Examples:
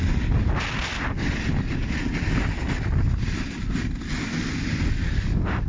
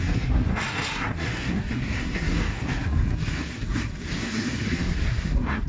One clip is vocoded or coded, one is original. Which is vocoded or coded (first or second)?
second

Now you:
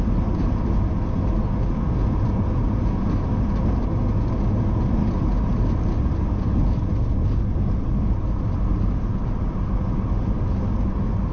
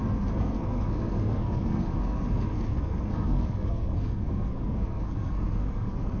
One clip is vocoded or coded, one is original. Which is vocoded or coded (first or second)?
second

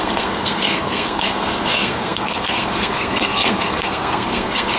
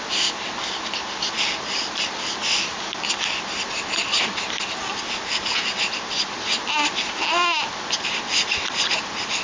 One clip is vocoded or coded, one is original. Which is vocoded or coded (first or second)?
first